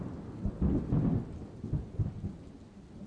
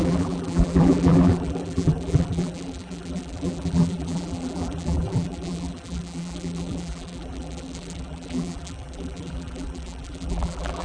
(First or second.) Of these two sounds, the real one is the first